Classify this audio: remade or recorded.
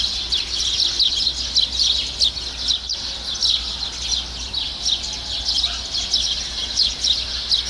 recorded